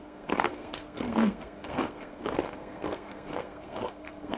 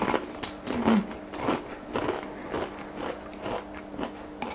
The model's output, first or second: first